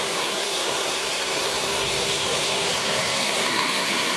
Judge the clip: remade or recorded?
remade